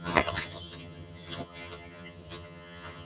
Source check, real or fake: fake